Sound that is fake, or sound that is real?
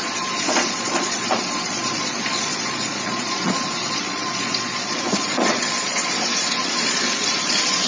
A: fake